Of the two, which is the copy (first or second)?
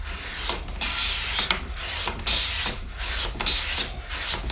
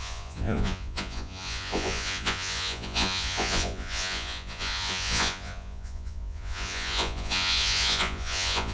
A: second